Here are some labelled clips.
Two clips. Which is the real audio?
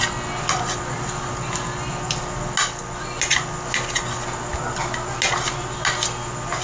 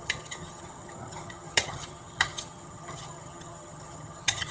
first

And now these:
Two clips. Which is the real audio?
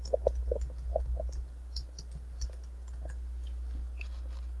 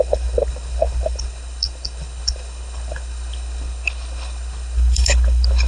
first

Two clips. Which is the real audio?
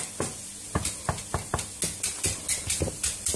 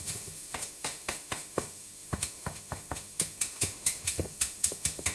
first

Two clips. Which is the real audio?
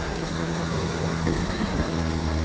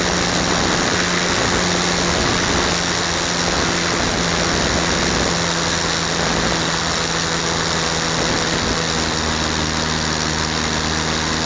second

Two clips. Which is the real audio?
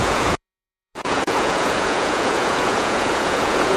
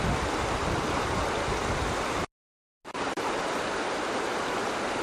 second